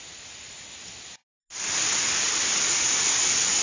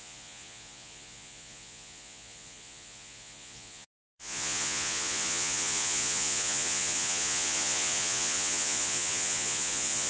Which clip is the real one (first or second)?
first